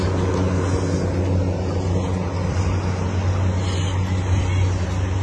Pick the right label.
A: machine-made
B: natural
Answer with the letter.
B